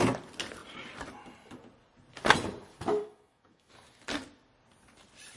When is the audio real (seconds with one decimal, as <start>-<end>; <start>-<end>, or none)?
0.0-3.0; 3.7-5.4